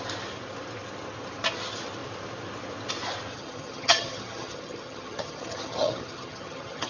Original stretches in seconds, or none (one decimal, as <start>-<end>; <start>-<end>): 0.0-3.3